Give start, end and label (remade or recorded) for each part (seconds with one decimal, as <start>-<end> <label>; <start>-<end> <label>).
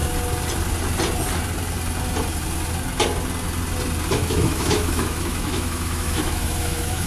0.0-4.1 recorded; 4.1-7.1 remade